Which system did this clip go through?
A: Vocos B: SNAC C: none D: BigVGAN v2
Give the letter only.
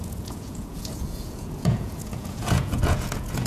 A